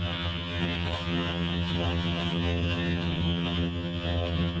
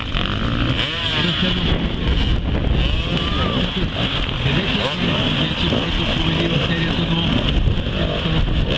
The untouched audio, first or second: second